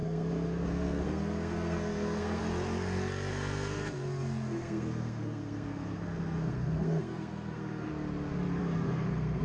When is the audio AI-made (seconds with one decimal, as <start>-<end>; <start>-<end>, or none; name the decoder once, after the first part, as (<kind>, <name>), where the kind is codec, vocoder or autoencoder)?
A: 0.0-2.4 (codec, SNAC); 3.3-7.9; 8.6-9.4

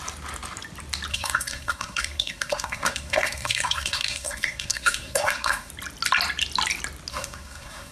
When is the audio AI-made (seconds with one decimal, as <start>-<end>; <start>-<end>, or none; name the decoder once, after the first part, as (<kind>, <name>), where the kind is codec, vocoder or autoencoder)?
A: 1.1-5.7 (codec, SNAC); 7.1-7.9

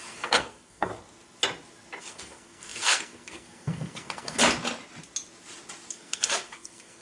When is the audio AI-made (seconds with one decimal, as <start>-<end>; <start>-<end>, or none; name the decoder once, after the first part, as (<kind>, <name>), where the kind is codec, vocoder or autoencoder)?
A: 0.0-0.9 (codec, SNAC); 2.0-4.4; 5.9-7.0

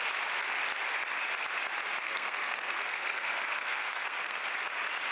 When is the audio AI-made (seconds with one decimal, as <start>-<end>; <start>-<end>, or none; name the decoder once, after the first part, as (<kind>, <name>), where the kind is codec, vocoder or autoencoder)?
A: 2.0-4.4 (codec, SNAC)

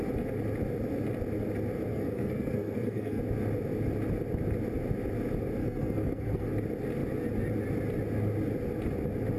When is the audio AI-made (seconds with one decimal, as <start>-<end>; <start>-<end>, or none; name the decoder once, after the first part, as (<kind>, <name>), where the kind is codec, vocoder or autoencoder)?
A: 1.9-3.2 (codec, SNAC); 5.6-6.5

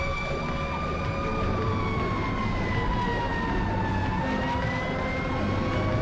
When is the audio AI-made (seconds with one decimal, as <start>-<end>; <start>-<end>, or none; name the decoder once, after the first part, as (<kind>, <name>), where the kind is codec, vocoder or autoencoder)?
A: none

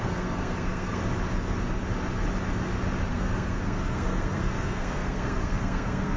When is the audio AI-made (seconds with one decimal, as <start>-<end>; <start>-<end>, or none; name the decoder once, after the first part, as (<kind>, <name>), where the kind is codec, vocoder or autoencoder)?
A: 0.0-1.0 (codec, SNAC); 3.1-6.2